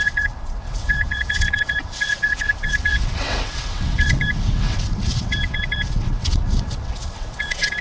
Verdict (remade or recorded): remade